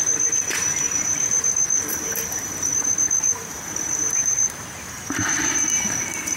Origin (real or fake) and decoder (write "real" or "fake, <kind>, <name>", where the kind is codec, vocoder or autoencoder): fake, vocoder, BigVGAN v2